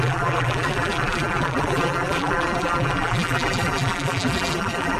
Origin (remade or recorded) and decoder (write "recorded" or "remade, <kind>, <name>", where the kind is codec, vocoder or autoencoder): remade, vocoder, BigVGAN v2